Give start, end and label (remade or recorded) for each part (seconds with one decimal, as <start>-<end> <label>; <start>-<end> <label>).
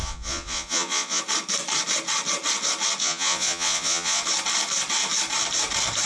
0.0-1.2 remade; 1.2-3.0 recorded; 3.0-4.2 remade; 4.2-6.1 recorded